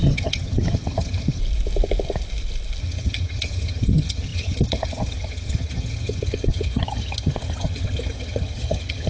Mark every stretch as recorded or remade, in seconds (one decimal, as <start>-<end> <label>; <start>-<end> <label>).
0.0-1.4 remade; 1.4-2.8 recorded; 2.8-9.1 remade